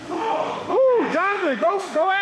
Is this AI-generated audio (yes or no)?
yes